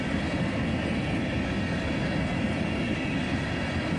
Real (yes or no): yes